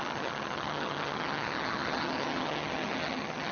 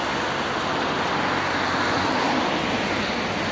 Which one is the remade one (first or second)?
first